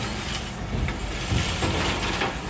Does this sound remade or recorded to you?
remade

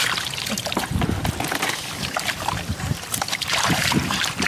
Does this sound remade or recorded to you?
remade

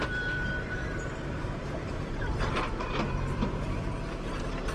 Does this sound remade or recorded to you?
remade